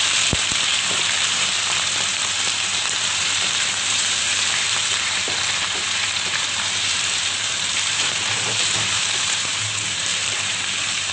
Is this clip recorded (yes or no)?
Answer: no